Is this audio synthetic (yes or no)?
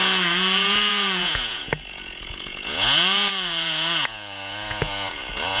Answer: yes